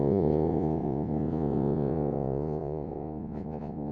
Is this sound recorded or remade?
remade